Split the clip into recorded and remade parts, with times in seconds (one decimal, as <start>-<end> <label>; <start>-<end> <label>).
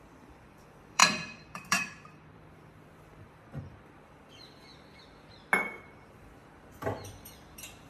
0.0-4.7 remade; 4.7-5.6 recorded; 5.6-7.9 remade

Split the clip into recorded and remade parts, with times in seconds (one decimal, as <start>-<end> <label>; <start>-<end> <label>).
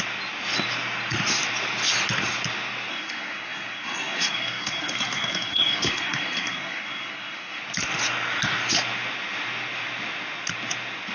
0.0-2.9 recorded; 2.9-7.6 remade; 7.6-11.1 recorded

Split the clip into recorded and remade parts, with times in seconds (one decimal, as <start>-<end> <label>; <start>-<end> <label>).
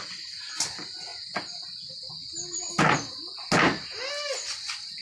0.0-5.0 recorded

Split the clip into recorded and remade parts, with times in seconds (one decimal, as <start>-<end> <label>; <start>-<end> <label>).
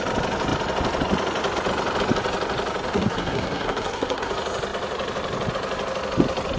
0.0-2.9 recorded; 2.9-4.3 remade; 4.3-6.6 recorded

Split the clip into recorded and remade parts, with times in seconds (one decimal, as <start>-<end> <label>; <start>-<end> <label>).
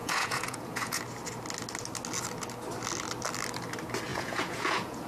0.0-1.0 remade; 1.0-4.1 recorded; 4.1-5.1 remade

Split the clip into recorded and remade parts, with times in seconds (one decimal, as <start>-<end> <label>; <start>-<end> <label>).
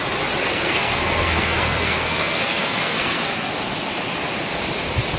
0.0-0.4 recorded; 0.4-3.5 remade; 3.5-5.2 recorded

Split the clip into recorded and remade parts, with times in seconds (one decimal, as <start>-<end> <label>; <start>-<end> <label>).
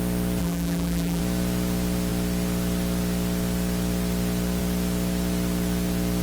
0.0-0.4 recorded; 0.4-1.2 remade; 1.2-6.2 recorded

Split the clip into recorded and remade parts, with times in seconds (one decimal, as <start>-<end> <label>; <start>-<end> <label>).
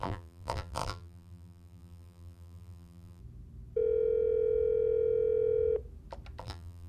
0.0-3.2 remade; 3.2-6.4 recorded; 6.4-6.9 remade